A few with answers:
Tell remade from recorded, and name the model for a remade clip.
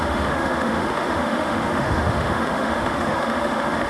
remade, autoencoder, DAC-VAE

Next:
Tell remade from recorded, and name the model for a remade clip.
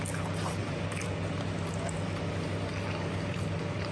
recorded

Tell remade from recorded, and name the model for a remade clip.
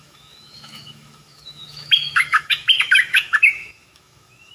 remade, autoencoder, DAC-VAE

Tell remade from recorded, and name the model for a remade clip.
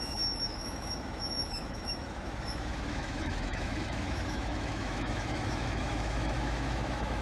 remade, autoencoder, DAC-VAE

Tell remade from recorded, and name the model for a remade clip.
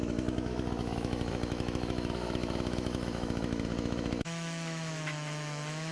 remade, autoencoder, DAC-VAE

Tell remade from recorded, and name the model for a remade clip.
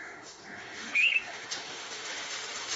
remade, autoencoder, DAC-VAE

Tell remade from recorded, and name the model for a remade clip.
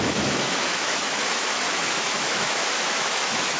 remade, autoencoder, DAC-VAE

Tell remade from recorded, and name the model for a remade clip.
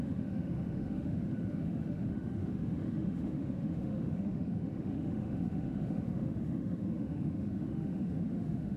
remade, autoencoder, DAC-VAE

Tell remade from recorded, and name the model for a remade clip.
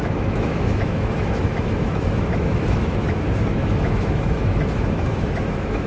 remade, autoencoder, DAC-VAE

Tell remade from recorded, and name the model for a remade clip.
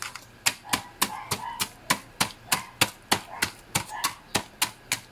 recorded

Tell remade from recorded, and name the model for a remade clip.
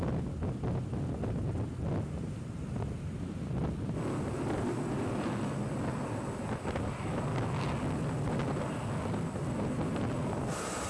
recorded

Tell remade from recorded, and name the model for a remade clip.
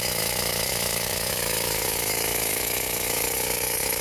remade, autoencoder, DAC-VAE